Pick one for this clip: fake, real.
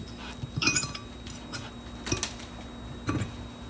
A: real